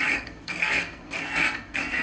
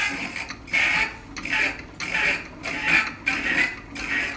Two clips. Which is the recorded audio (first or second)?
second